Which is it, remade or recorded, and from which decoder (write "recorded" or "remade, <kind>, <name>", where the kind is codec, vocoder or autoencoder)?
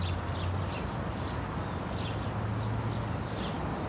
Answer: recorded